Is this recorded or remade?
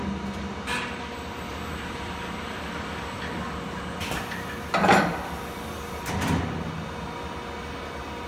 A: recorded